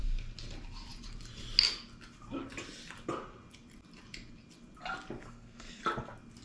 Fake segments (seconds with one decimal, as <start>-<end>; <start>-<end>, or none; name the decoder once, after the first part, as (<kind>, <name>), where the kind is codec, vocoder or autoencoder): 5.2-5.8 (codec, SNAC)